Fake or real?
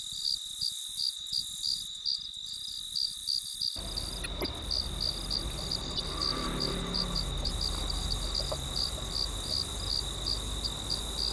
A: real